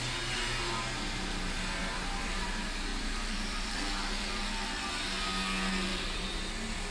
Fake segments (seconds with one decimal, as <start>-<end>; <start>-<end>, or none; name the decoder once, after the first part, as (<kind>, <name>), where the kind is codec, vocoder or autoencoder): 1.8-2.5 (vocoder, BigVGAN v2); 2.9-4.4; 5.9-6.4

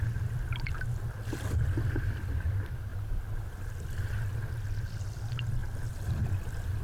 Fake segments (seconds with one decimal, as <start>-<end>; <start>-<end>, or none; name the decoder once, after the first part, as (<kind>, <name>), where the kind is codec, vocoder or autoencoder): none

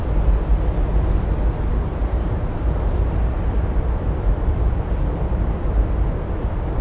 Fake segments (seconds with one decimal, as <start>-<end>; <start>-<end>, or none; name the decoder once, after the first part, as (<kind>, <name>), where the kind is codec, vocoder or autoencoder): 0.0-0.5 (vocoder, BigVGAN v2); 1.7-6.8

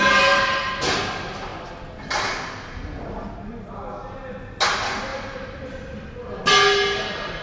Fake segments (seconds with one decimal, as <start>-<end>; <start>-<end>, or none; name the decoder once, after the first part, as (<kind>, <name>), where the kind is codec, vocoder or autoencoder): 5.1-6.4 (vocoder, BigVGAN v2)

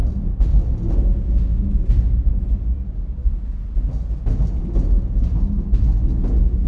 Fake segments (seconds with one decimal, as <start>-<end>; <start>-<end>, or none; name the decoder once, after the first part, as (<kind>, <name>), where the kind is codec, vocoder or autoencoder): none